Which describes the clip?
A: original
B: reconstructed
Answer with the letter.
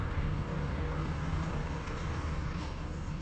B